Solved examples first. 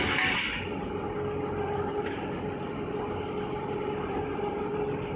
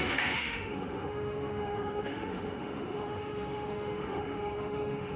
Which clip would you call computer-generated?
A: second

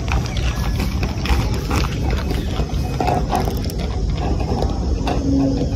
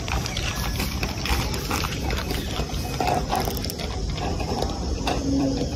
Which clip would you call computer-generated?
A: second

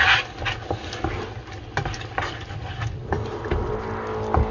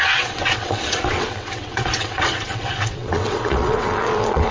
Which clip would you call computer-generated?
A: second